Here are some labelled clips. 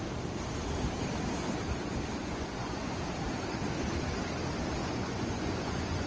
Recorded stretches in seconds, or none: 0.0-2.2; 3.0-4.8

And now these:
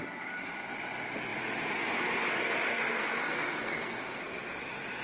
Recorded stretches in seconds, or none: 0.0-2.7; 4.4-5.0